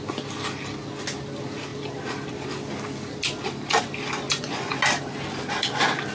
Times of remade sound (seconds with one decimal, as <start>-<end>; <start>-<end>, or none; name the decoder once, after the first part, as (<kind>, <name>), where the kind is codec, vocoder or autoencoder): 4.3-4.8 (vocoder, Vocos)